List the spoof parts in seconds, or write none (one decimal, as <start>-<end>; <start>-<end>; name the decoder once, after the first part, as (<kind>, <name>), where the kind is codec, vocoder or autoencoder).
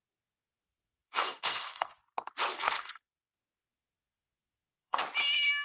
0.7-1.9 (codec, SNAC); 2.5-3.1; 4.0-5.0